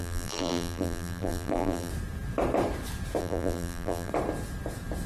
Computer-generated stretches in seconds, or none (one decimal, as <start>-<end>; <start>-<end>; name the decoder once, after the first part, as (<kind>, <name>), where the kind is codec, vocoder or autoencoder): 0.0-1.9 (vocoder, BigVGAN v2); 3.2-4.1